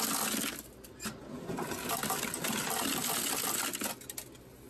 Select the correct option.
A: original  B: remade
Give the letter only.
A